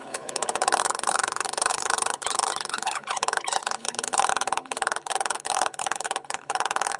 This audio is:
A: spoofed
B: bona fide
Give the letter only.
A